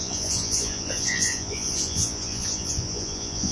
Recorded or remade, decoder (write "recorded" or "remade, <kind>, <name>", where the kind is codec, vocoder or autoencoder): remade, vocoder, Vocos